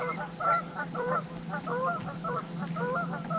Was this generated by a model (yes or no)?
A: yes